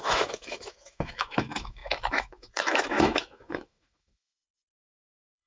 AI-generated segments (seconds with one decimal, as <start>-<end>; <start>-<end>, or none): 0.0-5.5